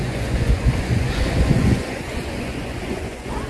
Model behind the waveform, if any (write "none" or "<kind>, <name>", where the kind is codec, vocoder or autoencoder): vocoder, Vocos